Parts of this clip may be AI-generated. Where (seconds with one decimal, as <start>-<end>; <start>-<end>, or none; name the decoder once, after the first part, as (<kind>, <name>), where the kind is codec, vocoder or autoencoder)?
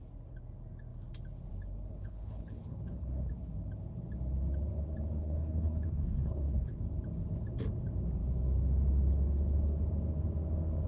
1.9-3.3 (codec, HILCodec); 5.2-6.8